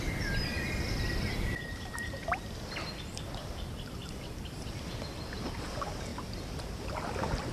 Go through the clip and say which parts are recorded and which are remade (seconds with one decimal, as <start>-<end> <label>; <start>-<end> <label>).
0.0-7.5 recorded